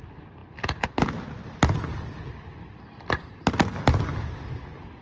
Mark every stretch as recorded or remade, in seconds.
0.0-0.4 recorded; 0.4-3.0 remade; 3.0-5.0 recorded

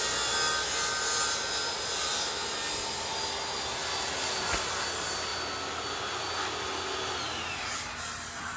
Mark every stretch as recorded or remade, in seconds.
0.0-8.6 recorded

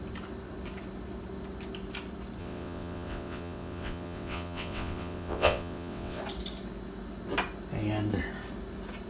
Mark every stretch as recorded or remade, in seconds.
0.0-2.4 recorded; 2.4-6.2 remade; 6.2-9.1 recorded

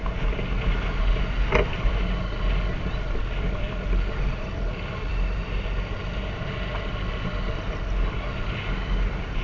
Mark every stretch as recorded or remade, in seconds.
0.0-9.4 recorded

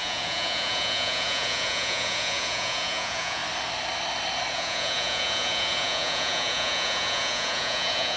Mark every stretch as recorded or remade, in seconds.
0.0-3.4 remade; 3.4-4.5 recorded; 4.5-8.2 remade

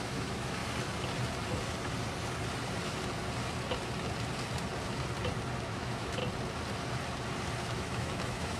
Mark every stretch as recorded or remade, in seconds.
0.0-0.6 remade; 0.6-5.7 recorded; 5.7-6.2 remade; 6.2-7.6 recorded; 7.6-8.6 remade